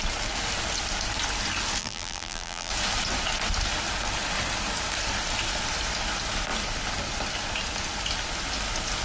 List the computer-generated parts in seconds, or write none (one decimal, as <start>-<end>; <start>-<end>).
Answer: 1.8-2.7